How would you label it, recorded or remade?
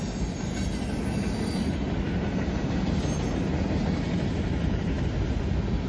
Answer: recorded